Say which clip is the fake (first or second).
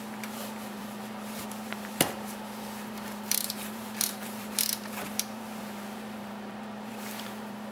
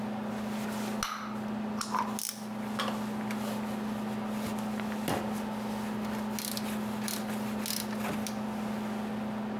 first